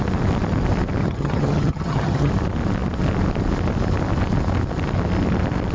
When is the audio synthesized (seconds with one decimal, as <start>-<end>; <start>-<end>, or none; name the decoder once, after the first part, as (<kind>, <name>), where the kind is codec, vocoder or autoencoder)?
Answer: 1.0-2.3 (vocoder, HiFi-GAN)